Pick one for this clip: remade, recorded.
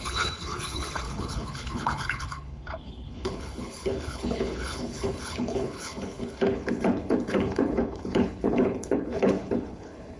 remade